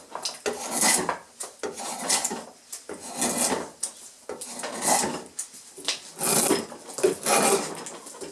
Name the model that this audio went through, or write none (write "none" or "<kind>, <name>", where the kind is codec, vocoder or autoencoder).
none